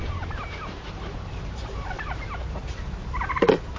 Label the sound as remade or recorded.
remade